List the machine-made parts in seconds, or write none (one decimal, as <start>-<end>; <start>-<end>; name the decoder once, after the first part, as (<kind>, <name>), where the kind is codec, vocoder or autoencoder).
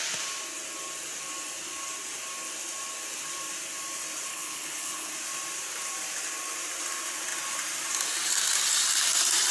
4.3-5.1 (codec, HILCodec)